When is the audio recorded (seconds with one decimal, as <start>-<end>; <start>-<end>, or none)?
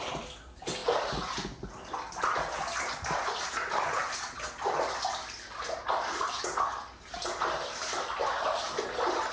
0.0-9.3